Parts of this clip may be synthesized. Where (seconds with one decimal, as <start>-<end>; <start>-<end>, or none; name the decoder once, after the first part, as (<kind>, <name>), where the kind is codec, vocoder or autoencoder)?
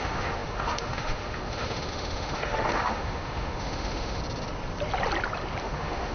0.0-4.2 (autoencoder, DAC-VAE); 5.6-6.1